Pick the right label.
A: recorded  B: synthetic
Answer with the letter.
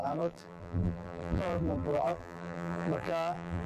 B